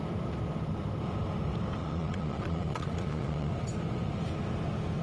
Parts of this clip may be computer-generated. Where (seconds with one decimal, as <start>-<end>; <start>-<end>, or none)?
1.8-3.5

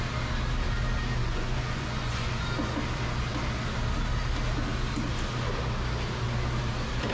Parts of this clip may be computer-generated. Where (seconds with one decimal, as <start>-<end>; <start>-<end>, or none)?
1.2-2.4